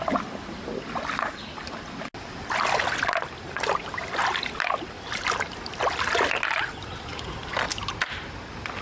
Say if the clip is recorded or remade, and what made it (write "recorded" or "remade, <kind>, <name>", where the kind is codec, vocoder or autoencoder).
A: recorded